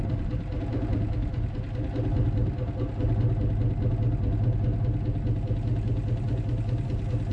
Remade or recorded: recorded